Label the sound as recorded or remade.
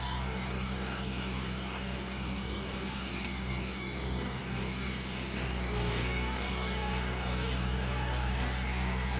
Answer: remade